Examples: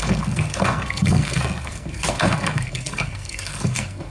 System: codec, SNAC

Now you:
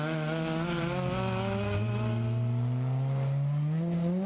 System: none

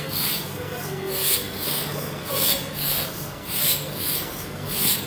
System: codec, SNAC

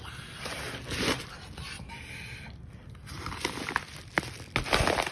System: none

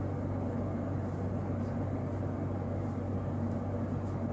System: none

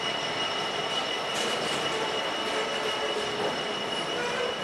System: none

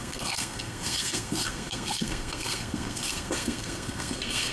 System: codec, SNAC